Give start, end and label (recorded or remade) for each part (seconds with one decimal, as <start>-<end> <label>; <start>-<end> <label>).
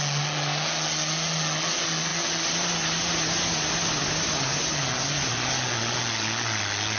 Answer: 0.0-7.0 recorded